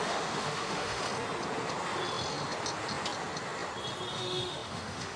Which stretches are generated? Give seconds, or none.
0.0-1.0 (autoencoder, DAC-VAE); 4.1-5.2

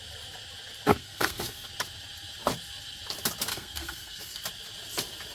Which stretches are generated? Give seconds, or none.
0.9-1.7 (codec, SNAC); 3.5-4.4

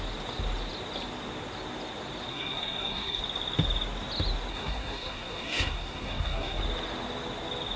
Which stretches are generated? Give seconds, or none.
2.3-3.2 (codec, SNAC); 4.5-6.6

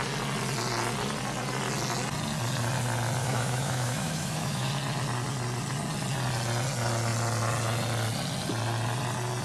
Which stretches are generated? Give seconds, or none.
3.2-4.7 (autoencoder, DAC-VAE)

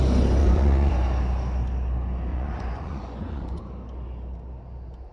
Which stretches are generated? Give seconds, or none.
0.4-0.9 (vocoder, Vocos); 2.3-3.6

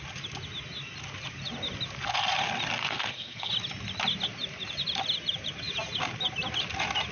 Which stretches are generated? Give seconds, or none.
2.8-3.5 (codec, SNAC)

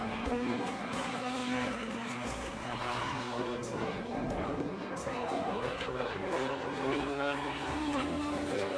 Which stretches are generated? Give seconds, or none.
0.0-8.8 (codec, SNAC)